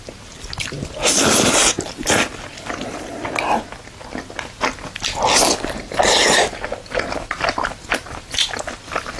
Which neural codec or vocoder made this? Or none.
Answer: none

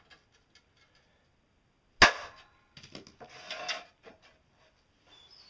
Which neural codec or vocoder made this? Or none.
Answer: none